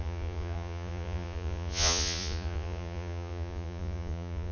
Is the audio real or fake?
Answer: fake